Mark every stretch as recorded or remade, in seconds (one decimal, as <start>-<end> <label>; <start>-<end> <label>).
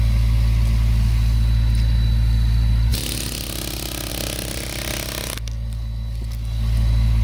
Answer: 0.0-7.2 recorded